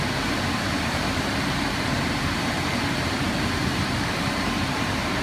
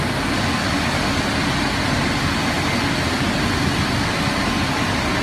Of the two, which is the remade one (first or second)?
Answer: first